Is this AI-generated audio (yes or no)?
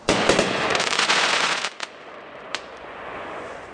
yes